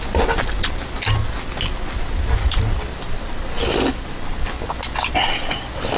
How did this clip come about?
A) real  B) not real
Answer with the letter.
A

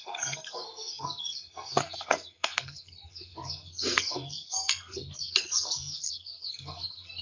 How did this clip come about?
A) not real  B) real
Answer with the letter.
A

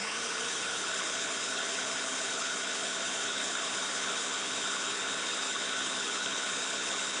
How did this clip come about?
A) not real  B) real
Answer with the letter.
A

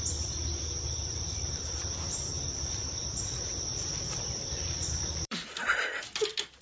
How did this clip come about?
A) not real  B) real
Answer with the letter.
A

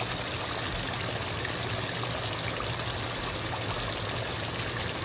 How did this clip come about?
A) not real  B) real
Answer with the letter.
B